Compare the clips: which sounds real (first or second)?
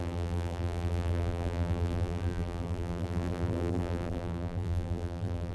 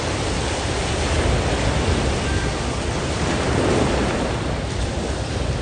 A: second